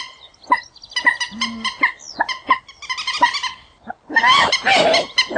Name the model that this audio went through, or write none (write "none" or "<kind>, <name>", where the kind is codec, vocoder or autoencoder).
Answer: none